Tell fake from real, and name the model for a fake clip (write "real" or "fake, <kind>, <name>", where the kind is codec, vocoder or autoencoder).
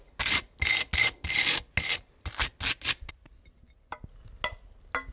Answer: real